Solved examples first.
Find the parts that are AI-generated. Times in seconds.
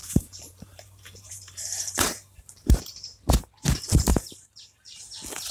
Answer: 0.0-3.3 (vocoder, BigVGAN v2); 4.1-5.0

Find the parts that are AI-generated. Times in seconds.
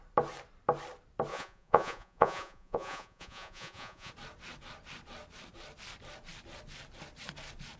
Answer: 1.3-4.1 (vocoder, Vocos)